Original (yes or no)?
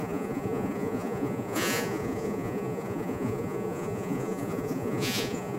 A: no